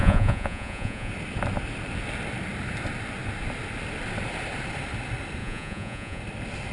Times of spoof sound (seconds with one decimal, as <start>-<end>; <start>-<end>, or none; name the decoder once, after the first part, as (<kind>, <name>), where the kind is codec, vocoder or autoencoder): 0.0-1.1 (vocoder, Vocos); 5.4-6.2